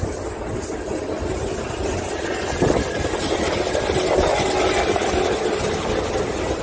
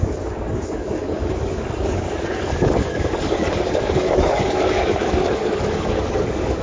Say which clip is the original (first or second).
first